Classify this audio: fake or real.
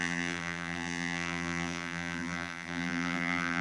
fake